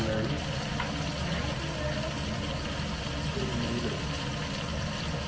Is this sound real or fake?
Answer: real